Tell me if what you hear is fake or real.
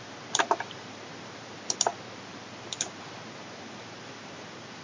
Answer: fake